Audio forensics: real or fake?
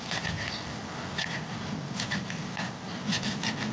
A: real